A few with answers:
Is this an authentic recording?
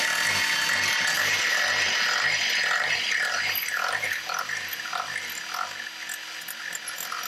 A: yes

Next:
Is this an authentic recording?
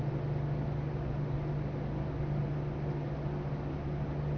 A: yes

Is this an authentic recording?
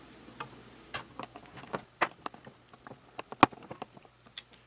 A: yes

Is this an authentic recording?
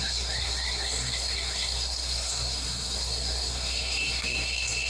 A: no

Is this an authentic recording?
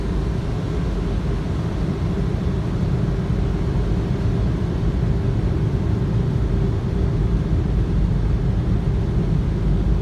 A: yes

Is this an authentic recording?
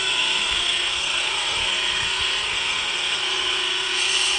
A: no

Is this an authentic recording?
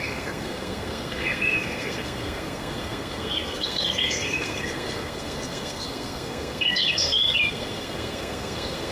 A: no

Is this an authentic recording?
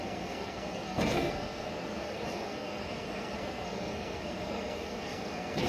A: no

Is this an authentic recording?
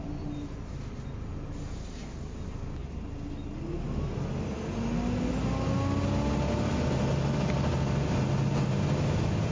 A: yes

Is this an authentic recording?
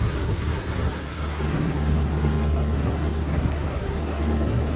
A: no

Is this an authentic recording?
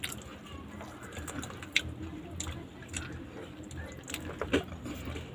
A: yes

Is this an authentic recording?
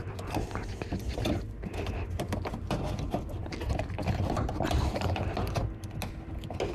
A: yes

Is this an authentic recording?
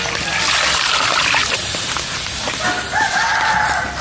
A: yes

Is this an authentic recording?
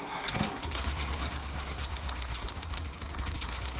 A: no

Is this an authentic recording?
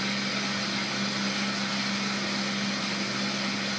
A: yes